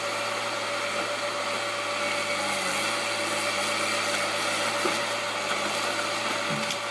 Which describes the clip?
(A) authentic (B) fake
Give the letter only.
A